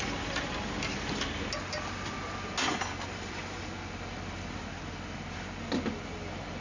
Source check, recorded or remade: recorded